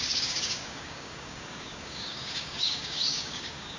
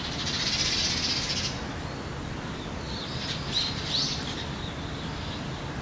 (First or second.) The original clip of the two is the second